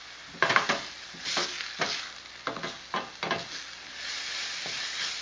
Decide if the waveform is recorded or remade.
recorded